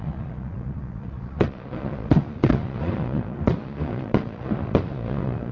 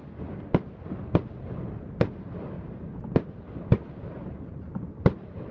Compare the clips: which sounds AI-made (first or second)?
first